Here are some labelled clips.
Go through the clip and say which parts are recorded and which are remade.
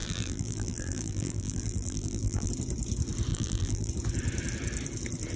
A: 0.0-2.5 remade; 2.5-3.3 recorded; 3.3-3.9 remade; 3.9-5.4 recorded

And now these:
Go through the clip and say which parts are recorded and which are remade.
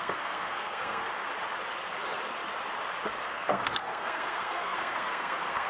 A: 0.0-1.1 remade; 1.1-3.3 recorded; 3.3-5.7 remade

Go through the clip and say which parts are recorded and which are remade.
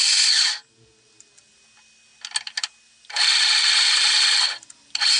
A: 0.0-5.2 recorded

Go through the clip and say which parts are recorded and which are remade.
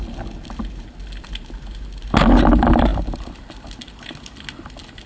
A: 0.0-5.1 recorded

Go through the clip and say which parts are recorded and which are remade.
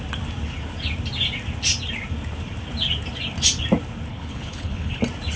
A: 0.0-4.1 recorded; 4.1-5.0 remade; 5.0-5.4 recorded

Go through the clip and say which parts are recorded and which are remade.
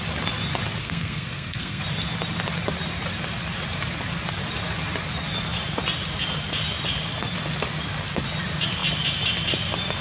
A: 0.0-0.8 recorded; 0.8-1.8 remade; 1.8-10.0 recorded